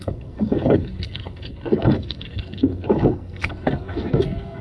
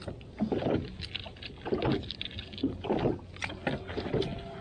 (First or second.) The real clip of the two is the second